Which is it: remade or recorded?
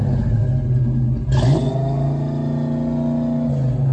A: recorded